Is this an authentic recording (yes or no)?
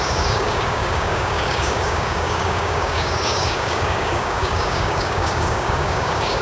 no